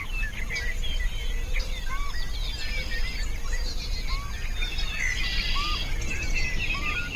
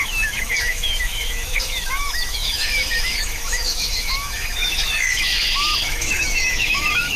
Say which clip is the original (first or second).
first